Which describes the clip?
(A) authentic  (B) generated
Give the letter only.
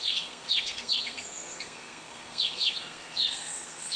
B